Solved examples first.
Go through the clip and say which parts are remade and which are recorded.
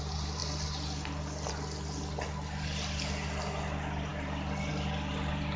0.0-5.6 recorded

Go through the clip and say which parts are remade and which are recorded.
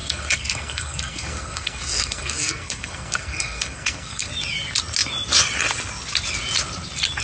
0.0-4.3 remade; 4.3-7.2 recorded